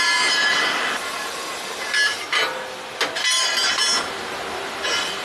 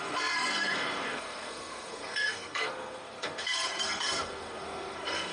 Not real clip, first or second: second